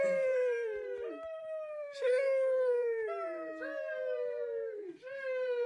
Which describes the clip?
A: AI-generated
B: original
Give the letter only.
A